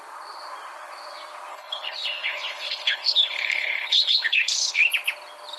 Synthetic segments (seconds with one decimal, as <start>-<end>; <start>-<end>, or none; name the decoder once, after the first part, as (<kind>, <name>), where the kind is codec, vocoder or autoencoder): 1.5-4.9 (codec, HILCodec)